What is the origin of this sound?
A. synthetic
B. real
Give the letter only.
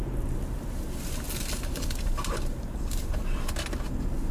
B